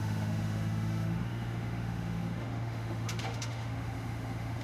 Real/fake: fake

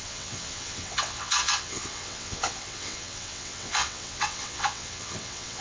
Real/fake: fake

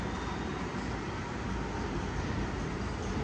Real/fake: real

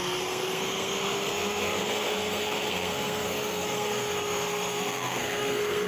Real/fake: fake